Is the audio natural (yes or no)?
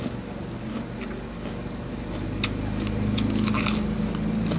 yes